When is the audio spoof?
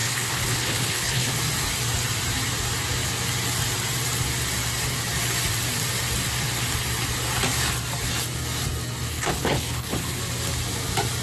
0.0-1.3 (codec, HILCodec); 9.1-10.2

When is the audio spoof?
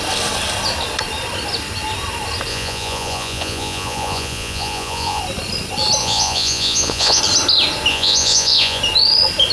2.5-5.2 (vocoder, Vocos); 6.0-7.2; 7.9-8.8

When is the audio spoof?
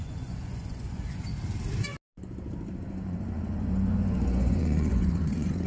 0.0-1.3 (vocoder, Vocos); 2.7-5.7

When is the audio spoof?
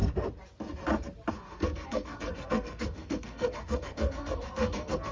1.3-5.1 (codec, SNAC)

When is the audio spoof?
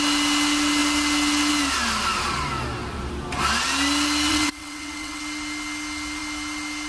4.3-5.2 (vocoder, WaveNeXt)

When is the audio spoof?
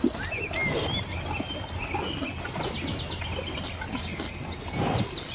none